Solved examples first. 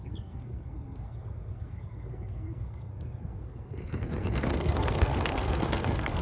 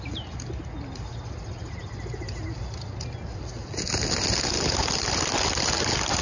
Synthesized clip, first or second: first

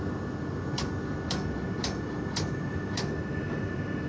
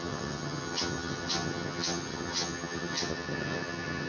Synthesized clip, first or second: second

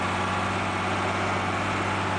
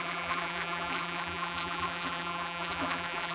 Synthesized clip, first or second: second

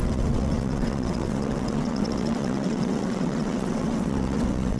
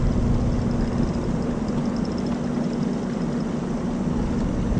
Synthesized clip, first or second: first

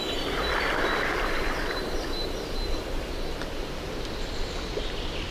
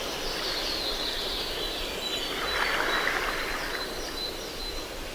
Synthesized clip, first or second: first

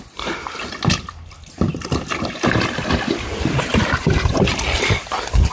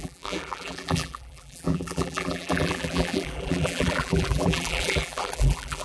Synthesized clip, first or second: second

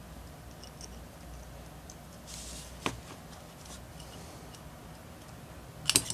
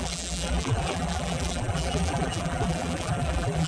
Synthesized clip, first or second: second